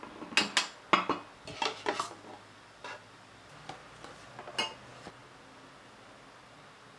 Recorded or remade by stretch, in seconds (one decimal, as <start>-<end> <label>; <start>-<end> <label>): 0.0-7.0 recorded

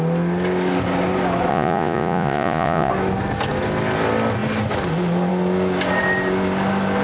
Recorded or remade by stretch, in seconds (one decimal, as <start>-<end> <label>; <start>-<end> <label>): 0.0-1.5 recorded; 1.5-2.9 remade; 2.9-7.0 recorded

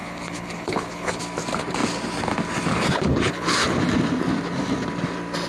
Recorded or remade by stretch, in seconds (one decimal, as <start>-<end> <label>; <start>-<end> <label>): 0.0-1.2 remade; 1.2-2.7 recorded; 2.7-3.8 remade; 3.8-5.5 recorded

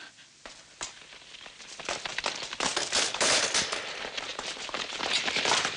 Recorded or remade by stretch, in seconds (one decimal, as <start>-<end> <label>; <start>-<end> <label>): 0.0-2.7 recorded; 2.7-3.8 remade; 3.8-4.3 recorded; 4.3-5.8 remade

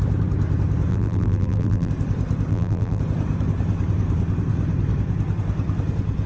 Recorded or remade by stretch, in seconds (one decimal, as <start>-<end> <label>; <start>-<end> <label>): 0.0-0.9 recorded; 0.9-1.9 remade; 1.9-2.5 recorded; 2.5-3.0 remade; 3.0-6.3 recorded

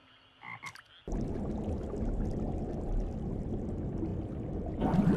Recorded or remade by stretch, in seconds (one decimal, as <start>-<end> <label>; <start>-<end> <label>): 0.0-0.8 remade; 0.8-4.1 recorded; 4.1-5.2 remade

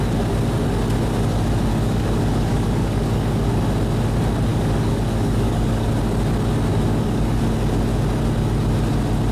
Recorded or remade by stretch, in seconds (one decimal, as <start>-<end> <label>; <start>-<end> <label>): 0.0-1.7 recorded; 1.7-3.6 remade; 3.6-4.5 recorded; 4.5-5.9 remade; 5.9-6.7 recorded; 6.7-7.4 remade; 7.4-9.3 recorded

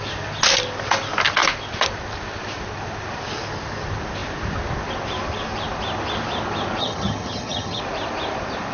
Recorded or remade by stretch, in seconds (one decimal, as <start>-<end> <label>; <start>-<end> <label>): 0.0-6.8 recorded; 6.8-7.8 remade; 7.8-8.7 recorded